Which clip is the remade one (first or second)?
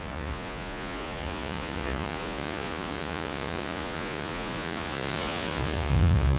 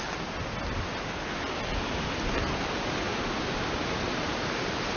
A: first